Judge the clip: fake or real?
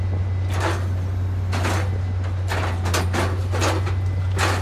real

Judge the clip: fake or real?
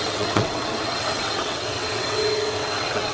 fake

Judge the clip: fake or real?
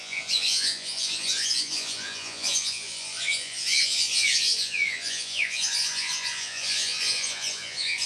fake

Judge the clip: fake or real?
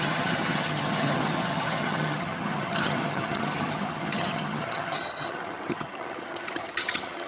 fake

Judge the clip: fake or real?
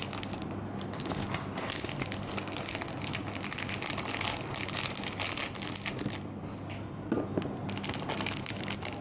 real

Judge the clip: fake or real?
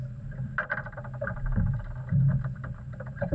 real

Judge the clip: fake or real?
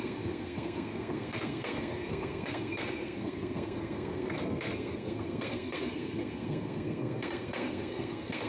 fake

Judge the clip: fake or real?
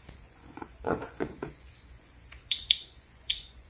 fake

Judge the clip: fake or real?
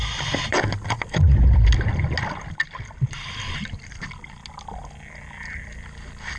real